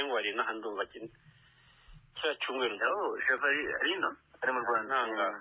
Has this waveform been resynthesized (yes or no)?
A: no